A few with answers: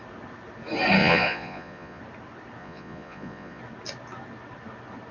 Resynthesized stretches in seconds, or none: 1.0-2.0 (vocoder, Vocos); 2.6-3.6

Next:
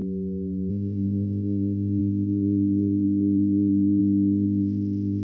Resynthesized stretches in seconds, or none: 0.7-5.2 (codec, ZipCodec)

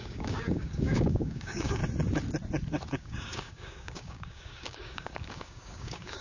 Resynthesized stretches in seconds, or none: 0.0-1.8 (codec, DAC); 2.9-6.2

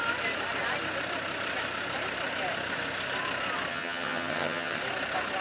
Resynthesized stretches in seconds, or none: 3.7-4.8 (vocoder, HiFi-GAN)

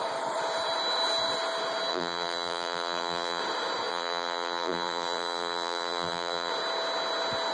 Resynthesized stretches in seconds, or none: 1.9-3.4 (vocoder, BigVGAN v2); 3.9-6.5

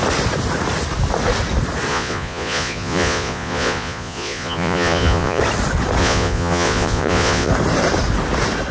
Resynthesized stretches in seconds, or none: 1.9-5.4 (vocoder, Vocos); 6.0-7.5

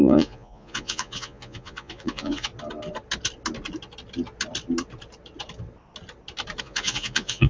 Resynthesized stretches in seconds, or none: 0.0-2.5 (vocoder, Vocos); 6.6-7.5

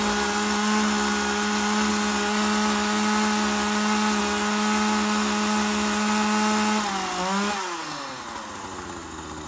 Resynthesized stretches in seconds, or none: none